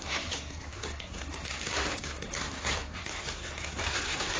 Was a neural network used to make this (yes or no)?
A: yes